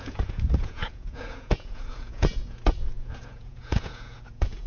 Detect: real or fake fake